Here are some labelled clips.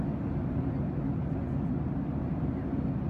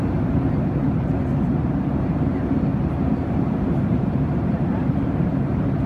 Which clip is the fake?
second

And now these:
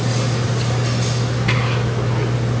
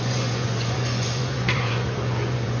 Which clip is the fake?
second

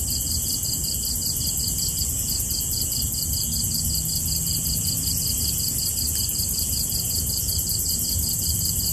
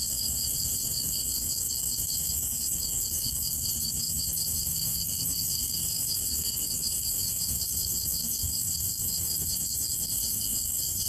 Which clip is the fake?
second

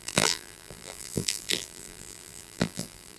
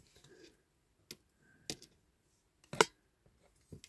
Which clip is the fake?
first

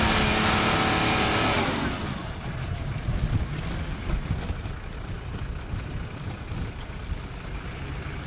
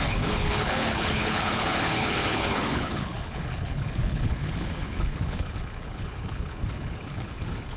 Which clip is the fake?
second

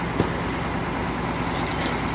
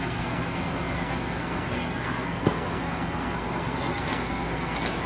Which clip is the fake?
second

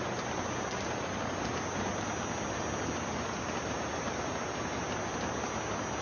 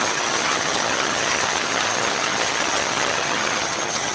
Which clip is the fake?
second